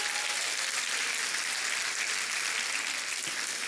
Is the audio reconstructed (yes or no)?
no